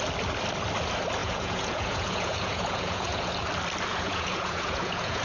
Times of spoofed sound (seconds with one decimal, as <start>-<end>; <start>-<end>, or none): 1.2-3.3; 3.9-5.2